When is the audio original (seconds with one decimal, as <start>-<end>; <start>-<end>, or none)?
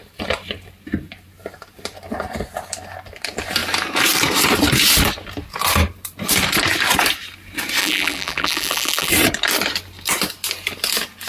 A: 0.0-7.8; 9.1-11.3